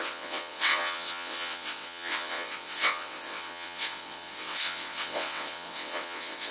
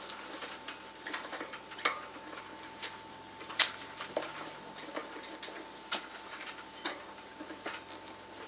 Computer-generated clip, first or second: first